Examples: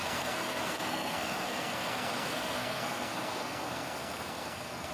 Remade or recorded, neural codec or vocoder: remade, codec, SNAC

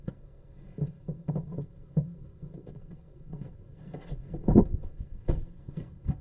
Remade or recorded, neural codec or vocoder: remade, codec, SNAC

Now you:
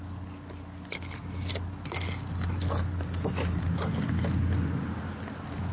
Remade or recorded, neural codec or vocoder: recorded